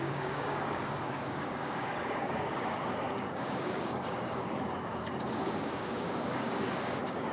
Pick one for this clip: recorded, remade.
remade